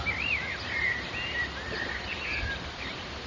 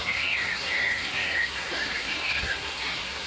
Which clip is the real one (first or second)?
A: first